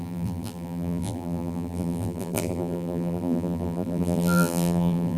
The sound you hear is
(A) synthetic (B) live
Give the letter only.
A